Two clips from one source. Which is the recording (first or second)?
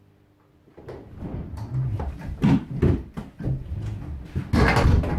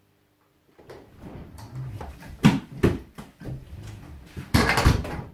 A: first